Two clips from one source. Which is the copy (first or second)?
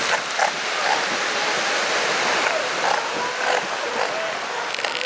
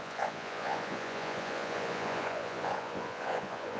second